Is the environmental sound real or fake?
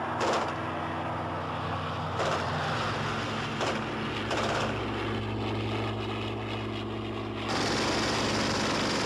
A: real